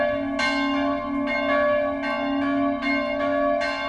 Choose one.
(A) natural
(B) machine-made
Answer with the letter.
A